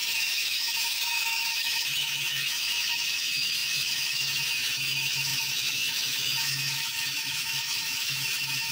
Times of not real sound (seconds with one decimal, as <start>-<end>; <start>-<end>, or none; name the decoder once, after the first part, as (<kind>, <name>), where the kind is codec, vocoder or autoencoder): 0.0-8.7 (autoencoder, DAC-VAE)